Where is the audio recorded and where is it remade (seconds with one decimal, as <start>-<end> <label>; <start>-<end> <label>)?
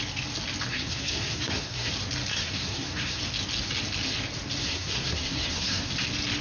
0.0-0.7 recorded; 0.7-1.9 remade; 1.9-2.3 recorded; 2.3-3.2 remade; 3.2-4.6 recorded; 4.6-5.9 remade; 5.9-6.4 recorded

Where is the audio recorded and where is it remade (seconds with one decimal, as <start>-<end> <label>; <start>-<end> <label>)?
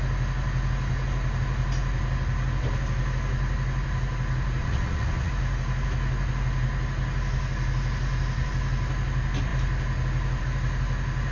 0.0-4.6 recorded; 4.6-5.3 remade; 5.3-11.3 recorded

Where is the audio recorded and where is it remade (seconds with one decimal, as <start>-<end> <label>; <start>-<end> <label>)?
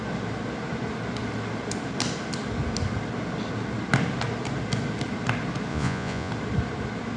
0.0-5.7 recorded; 5.7-6.3 remade; 6.3-7.2 recorded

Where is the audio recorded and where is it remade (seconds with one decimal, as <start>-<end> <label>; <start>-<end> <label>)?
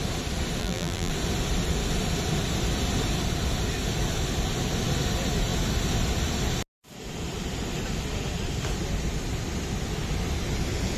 0.0-0.6 recorded; 0.6-1.1 remade; 1.1-11.0 recorded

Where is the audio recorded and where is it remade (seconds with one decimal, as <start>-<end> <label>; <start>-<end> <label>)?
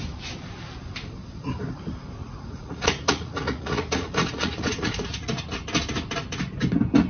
0.0-2.2 recorded; 2.2-5.3 remade; 5.3-7.1 recorded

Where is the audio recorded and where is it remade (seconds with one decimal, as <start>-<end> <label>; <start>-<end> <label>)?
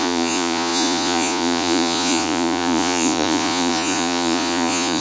0.0-5.0 remade